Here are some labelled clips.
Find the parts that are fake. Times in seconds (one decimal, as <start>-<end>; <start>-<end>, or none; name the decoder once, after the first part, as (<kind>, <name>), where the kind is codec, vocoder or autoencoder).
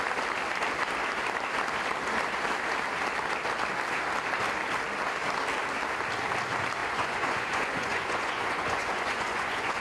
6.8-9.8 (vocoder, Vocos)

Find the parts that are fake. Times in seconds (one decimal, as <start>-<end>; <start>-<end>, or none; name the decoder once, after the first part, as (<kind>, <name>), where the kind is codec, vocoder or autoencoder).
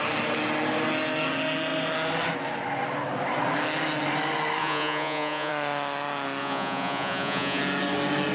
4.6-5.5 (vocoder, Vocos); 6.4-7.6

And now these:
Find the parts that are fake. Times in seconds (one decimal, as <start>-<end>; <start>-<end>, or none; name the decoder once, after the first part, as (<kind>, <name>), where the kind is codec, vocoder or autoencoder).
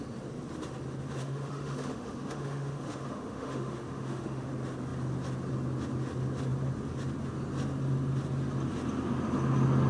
1.2-4.5 (autoencoder, DAC-VAE)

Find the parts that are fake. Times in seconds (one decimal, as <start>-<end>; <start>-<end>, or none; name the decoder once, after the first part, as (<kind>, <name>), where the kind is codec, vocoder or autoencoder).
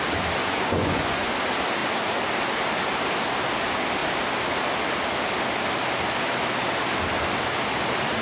0.4-1.3 (vocoder, Vocos)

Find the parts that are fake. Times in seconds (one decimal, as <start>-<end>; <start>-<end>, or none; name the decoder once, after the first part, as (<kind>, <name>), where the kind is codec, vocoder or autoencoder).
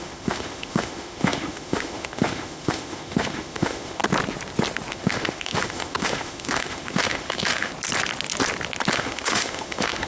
0.0-4.0 (autoencoder, DAC-VAE); 4.9-7.7; 8.9-10.1